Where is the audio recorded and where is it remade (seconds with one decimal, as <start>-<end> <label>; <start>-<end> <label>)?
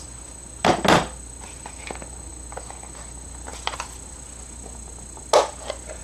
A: 0.0-6.0 recorded